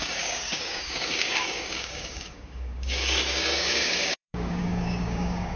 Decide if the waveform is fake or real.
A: fake